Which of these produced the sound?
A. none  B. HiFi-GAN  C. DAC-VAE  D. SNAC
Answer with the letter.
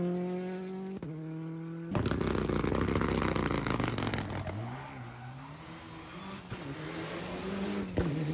A